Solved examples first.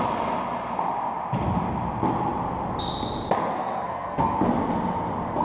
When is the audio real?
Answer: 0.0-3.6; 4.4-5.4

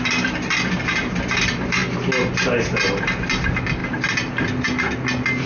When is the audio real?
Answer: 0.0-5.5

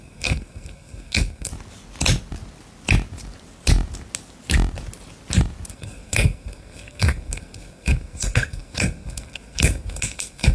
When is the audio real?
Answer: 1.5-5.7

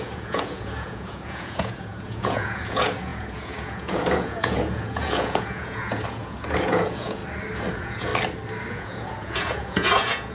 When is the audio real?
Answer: 7.2-7.7; 8.1-8.7

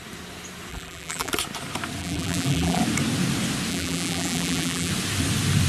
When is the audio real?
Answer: 0.0-0.7; 1.3-2.0; 2.8-3.7; 4.9-5.7

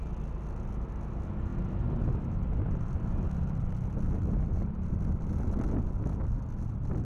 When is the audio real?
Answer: 0.0-7.0

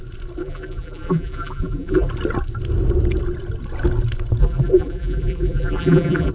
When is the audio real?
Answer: 0.0-0.4; 2.1-4.4

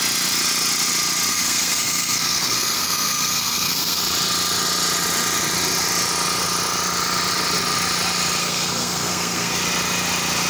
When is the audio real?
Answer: 0.0-1.3; 4.0-8.4; 9.6-10.5